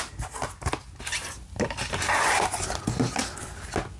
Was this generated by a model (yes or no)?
no